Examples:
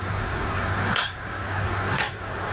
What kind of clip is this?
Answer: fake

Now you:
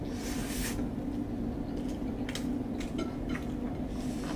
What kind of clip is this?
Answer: real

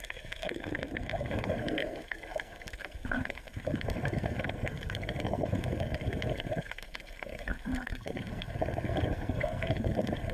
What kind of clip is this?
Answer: fake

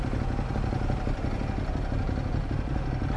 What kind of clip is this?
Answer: real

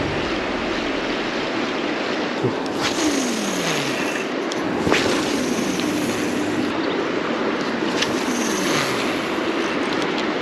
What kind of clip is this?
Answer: real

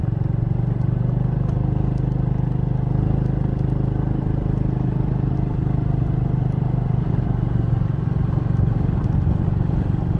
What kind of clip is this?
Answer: real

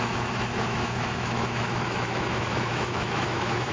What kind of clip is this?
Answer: fake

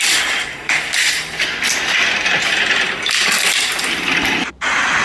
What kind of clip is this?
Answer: fake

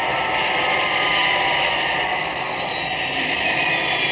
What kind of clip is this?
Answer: real